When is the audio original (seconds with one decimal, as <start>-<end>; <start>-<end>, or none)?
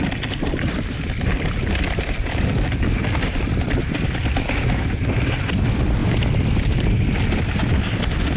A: 0.0-8.4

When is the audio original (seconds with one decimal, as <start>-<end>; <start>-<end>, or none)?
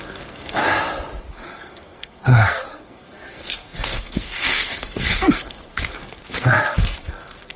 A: 0.6-1.3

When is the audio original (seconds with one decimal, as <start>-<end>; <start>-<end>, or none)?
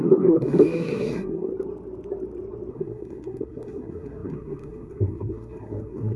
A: 1.5-2.7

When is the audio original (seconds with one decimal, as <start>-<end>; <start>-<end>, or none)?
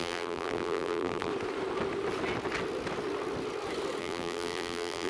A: 1.3-4.0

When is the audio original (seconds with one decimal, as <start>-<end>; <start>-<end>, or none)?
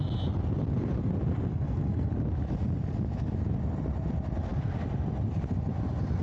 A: 0.0-1.5; 2.1-6.2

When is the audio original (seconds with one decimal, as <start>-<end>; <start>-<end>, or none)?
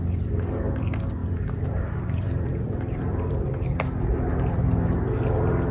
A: 0.0-1.2; 4.6-5.7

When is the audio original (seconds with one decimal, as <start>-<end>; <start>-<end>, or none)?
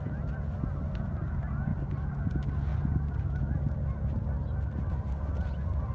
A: 0.0-1.7; 2.3-2.7; 3.4-5.9